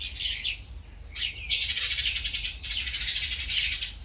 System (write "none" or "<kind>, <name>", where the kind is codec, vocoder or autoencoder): none